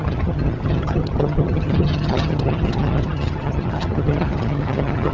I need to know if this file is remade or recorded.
remade